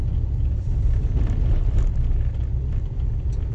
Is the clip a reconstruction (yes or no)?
no